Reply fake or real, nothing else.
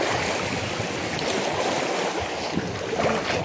real